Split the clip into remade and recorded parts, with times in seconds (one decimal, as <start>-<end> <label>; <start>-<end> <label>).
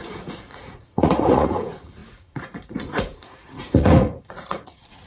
0.0-5.1 remade